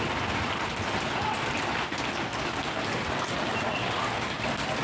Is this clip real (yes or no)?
yes